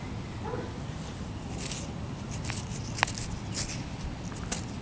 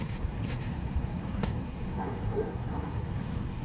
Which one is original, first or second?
first